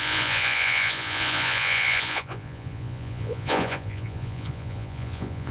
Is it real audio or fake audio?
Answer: fake